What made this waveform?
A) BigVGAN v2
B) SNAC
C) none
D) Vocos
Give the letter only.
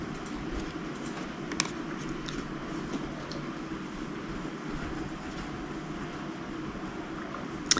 C